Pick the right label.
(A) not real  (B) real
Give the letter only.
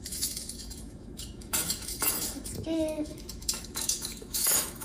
A